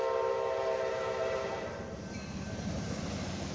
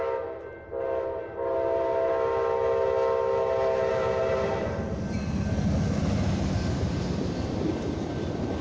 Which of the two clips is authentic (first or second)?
second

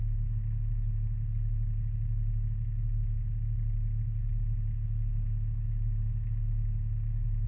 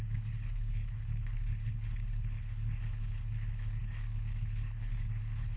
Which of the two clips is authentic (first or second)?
first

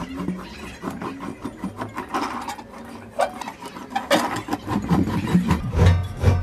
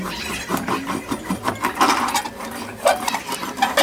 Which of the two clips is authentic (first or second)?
first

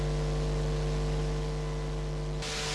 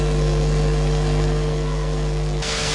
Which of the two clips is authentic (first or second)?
first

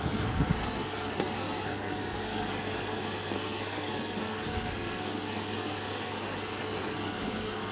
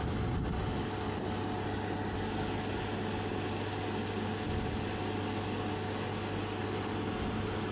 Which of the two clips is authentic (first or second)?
second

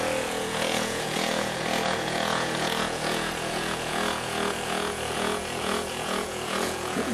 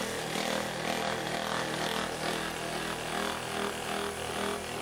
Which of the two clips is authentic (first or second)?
second